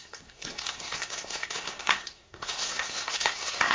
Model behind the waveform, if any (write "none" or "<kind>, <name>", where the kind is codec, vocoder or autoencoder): codec, SNAC